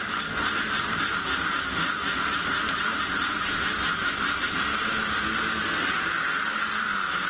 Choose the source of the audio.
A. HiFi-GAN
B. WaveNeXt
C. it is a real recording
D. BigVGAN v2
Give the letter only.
C